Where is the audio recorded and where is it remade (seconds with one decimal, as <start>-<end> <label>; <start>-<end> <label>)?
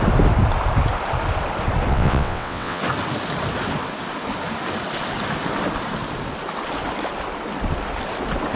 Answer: 0.0-1.9 recorded; 1.9-2.8 remade; 2.8-8.6 recorded